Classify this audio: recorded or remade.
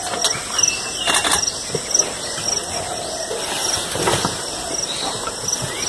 recorded